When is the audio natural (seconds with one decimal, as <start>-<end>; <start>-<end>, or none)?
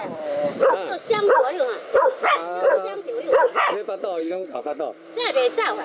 0.0-4.2; 4.8-5.8